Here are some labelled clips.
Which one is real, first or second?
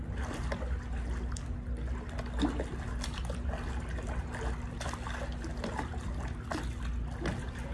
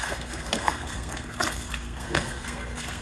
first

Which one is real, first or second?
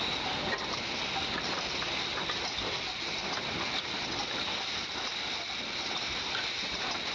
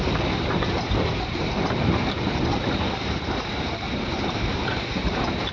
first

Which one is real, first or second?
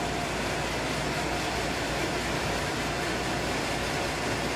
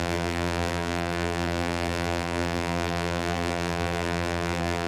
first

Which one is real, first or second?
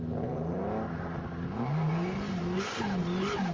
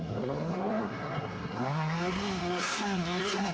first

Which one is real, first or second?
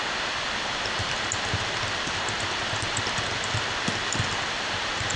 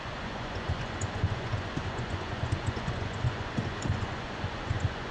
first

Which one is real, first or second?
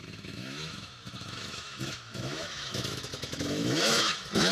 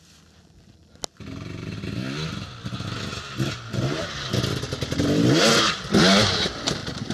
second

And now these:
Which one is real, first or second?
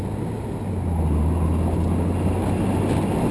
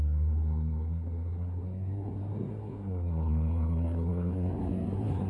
first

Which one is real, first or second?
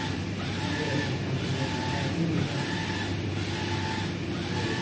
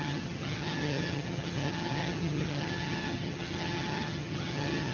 first